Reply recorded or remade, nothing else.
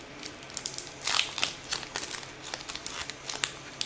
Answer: recorded